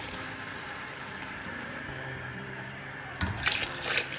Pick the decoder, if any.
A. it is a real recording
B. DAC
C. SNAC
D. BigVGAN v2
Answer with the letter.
D